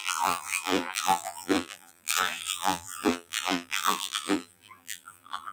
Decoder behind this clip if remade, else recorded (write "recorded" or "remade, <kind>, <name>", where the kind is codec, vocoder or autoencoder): remade, vocoder, BigVGAN v2